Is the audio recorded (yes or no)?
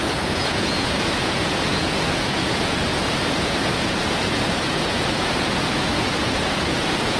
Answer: no